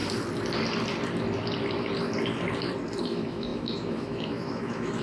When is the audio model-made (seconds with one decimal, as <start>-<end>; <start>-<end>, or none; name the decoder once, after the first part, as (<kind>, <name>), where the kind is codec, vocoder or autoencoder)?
3.0-5.0 (autoencoder, DAC-VAE)

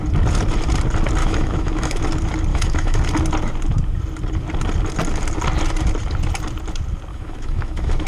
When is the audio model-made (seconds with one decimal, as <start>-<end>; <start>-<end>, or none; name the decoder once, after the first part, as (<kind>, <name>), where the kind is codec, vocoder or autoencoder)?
1.2-2.0 (autoencoder, DAC-VAE); 2.5-3.0; 7.1-8.1

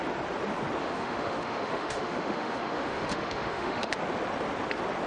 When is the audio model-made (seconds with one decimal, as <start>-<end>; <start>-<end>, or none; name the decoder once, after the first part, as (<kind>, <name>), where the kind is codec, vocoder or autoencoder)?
0.8-3.9 (autoencoder, DAC-VAE)

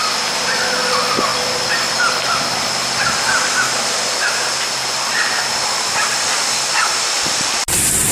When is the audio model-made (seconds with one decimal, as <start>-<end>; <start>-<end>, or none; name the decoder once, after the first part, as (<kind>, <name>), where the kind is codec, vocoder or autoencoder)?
none

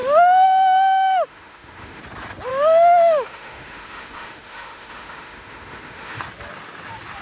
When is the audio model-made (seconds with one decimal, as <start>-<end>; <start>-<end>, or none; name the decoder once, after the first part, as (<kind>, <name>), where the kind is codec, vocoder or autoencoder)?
0.0-2.0 (autoencoder, DAC-VAE); 2.5-6.2